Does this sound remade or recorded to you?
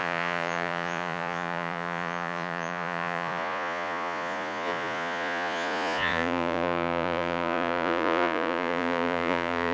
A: remade